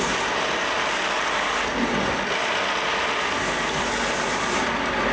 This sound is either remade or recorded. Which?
recorded